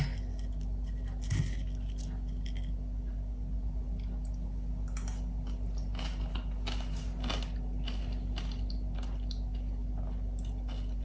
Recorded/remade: recorded